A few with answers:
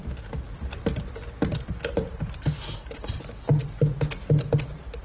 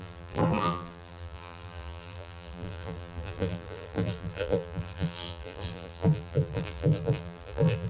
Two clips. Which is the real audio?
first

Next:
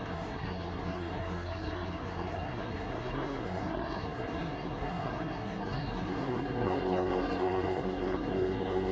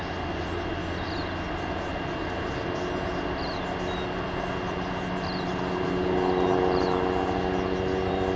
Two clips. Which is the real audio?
second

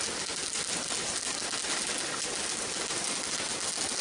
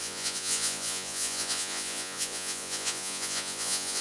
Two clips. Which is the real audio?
first